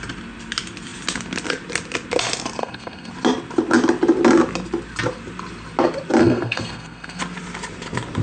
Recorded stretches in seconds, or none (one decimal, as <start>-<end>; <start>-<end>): 0.0-2.6; 3.1-6.2; 7.2-8.2